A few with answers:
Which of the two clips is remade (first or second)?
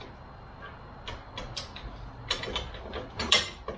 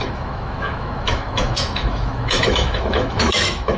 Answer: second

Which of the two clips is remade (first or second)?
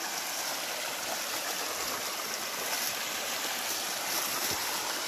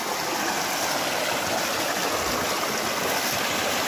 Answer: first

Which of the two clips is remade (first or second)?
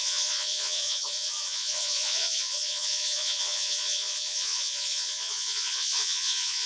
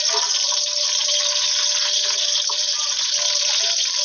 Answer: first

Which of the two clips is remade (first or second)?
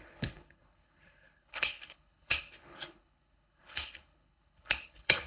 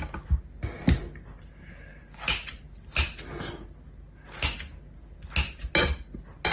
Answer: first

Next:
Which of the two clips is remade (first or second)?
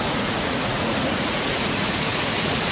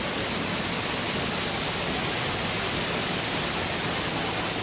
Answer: first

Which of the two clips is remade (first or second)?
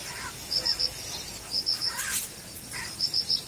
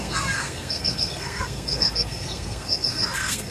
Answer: second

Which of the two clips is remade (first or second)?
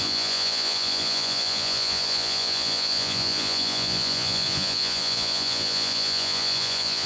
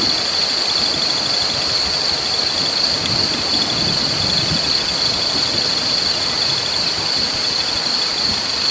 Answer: first